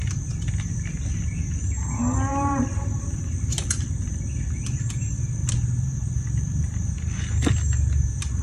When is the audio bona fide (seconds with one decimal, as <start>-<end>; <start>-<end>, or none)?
0.0-2.3; 4.2-5.4; 6.9-8.4

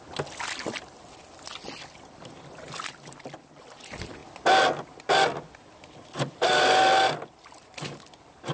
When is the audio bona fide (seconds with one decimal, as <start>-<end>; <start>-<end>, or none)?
0.0-8.5

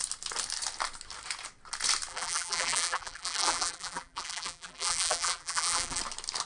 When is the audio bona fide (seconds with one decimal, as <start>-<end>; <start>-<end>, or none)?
0.0-2.1; 6.0-6.5

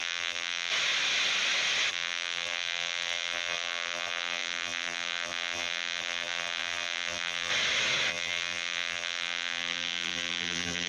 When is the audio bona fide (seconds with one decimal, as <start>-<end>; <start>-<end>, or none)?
0.7-1.9; 7.5-8.1

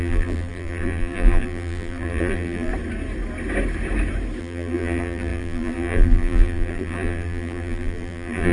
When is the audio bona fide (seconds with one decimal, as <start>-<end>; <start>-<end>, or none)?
2.7-4.4